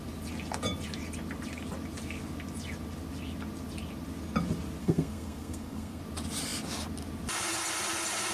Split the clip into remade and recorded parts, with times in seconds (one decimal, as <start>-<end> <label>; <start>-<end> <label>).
0.0-4.8 recorded; 4.8-6.0 remade; 6.0-8.3 recorded